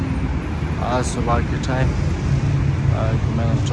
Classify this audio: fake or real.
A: real